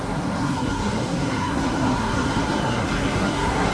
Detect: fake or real fake